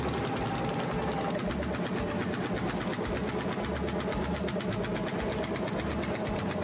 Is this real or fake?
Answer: real